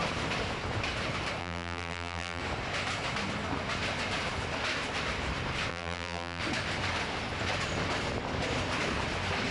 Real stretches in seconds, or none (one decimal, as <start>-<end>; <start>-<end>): 0.0-1.4; 2.4-5.7; 6.4-9.5